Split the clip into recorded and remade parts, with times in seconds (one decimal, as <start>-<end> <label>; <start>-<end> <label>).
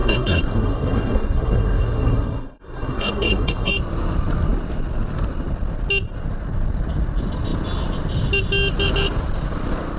0.0-3.7 remade; 3.7-10.0 recorded